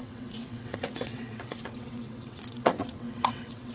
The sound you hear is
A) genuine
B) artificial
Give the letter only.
B